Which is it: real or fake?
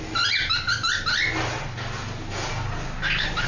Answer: real